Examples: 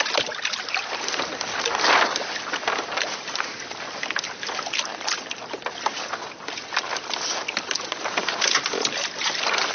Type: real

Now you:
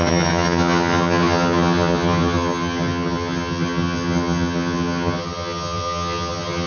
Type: fake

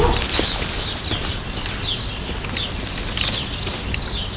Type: real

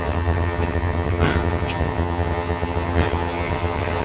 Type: fake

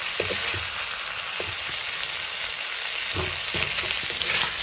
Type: real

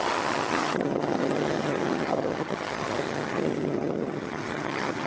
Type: fake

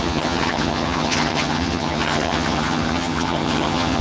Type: fake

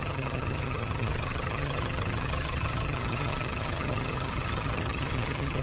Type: fake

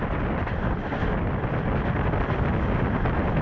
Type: real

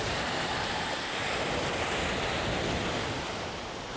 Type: real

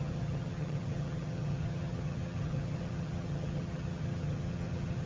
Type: fake